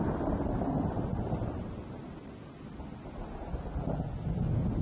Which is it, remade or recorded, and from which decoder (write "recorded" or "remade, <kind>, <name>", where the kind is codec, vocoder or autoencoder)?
recorded